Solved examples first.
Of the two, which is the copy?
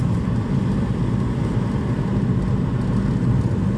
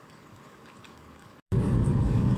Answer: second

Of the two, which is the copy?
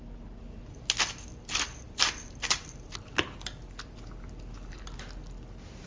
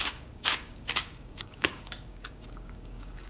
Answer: second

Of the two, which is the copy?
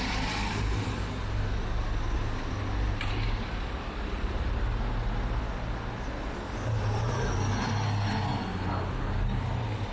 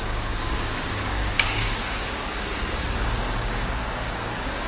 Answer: second